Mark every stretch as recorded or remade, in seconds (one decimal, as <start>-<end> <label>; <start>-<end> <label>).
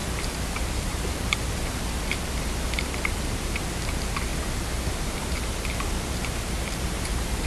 0.0-4.3 remade; 4.3-5.4 recorded; 5.4-7.5 remade